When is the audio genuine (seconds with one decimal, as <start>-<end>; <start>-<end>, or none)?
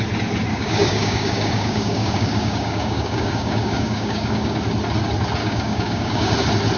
0.0-0.5; 4.6-5.4; 6.3-6.8